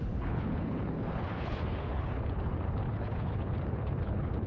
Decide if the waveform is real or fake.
fake